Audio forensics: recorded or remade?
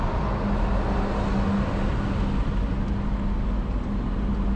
recorded